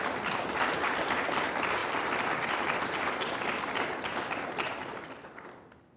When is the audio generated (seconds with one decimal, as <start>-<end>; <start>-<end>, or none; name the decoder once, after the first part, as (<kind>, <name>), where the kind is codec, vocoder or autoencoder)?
none